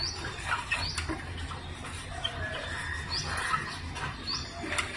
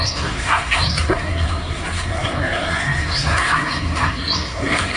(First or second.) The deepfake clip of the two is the second